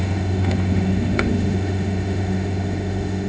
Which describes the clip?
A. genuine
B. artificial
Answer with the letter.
B